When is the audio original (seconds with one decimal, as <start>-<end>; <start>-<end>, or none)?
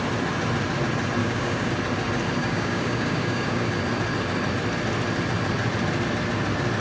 0.0-1.2; 1.7-2.4; 3.7-6.8